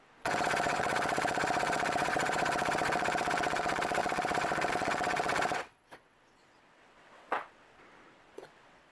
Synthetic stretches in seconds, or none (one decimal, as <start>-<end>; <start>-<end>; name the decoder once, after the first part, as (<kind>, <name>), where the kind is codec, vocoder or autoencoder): 0.0-8.9 (vocoder, WaveNeXt)